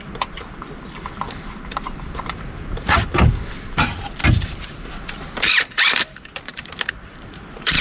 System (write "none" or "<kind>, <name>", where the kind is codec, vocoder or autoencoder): vocoder, BigVGAN v2